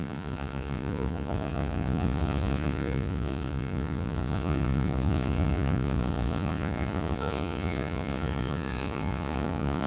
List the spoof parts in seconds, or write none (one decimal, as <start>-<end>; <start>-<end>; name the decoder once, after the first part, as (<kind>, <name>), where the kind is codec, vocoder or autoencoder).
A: 0.0-9.9 (vocoder, Vocos)